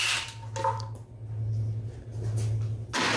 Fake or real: real